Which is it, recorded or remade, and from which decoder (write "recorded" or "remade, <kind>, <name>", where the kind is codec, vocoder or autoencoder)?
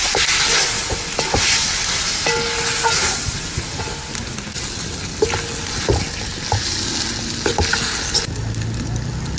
recorded